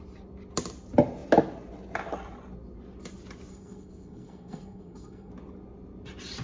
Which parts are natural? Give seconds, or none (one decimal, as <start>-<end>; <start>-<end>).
0.0-3.5; 5.3-6.4